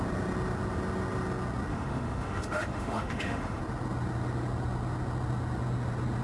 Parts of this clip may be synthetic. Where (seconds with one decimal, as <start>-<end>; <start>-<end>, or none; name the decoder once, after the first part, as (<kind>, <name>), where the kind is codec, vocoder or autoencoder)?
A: 1.7-3.6 (autoencoder, DAC-VAE)